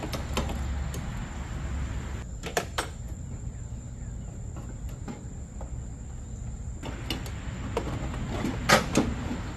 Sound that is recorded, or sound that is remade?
recorded